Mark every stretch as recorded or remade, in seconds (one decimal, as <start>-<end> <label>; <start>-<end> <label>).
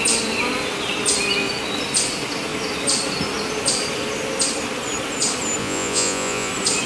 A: 0.0-5.6 recorded; 5.6-6.5 remade; 6.5-6.9 recorded